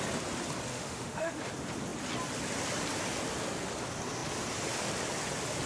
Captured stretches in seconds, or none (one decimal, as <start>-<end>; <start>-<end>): 0.0-0.7; 1.4-5.7